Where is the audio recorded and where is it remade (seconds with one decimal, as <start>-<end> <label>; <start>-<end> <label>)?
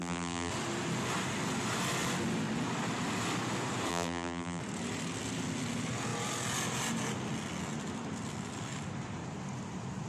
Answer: 0.0-0.5 remade; 0.5-3.9 recorded; 3.9-4.6 remade; 4.6-10.1 recorded